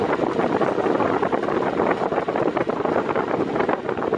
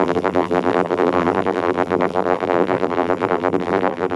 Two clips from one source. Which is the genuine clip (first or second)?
first